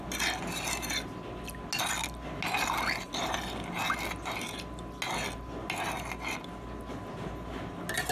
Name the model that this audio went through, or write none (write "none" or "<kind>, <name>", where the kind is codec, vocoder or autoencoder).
none